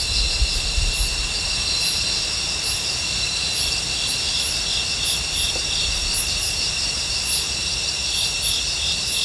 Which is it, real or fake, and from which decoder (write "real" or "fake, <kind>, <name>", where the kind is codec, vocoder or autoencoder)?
real